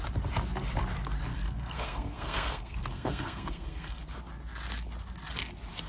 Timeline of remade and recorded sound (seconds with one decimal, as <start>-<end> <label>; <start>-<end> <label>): 0.0-1.3 recorded; 1.3-4.0 remade; 4.0-5.9 recorded